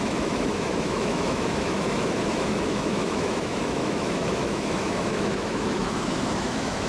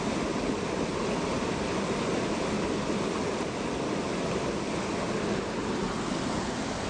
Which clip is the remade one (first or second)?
first